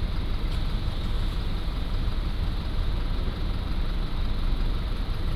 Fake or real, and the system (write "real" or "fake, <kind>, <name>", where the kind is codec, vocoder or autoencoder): fake, vocoder, BigVGAN v2